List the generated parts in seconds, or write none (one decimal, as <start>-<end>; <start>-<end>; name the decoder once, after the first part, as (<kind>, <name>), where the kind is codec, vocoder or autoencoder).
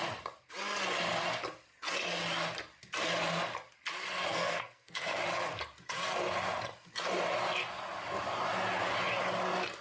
4.3-5.2 (codec, SNAC)